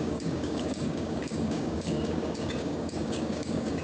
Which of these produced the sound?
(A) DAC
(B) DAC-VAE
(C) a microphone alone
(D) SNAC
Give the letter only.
A